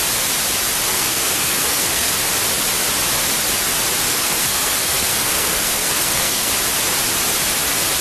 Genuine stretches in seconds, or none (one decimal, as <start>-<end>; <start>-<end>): 0.0-0.9; 2.1-4.1; 6.5-8.0